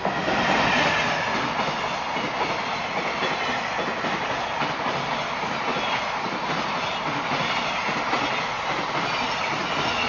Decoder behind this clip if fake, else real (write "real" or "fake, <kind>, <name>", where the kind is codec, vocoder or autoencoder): real